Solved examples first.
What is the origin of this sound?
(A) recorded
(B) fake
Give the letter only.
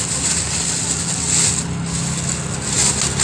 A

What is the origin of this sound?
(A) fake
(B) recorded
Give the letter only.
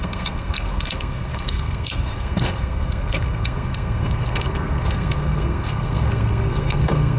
A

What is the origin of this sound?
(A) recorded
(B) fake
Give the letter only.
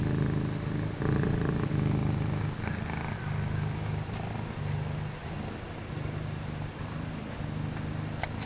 A